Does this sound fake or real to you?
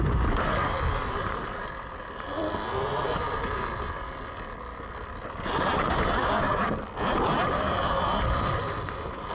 fake